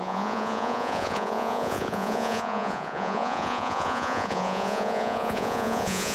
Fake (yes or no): yes